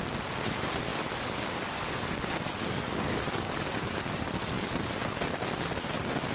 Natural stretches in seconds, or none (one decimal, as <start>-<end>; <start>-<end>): 0.0-0.9; 4.7-6.3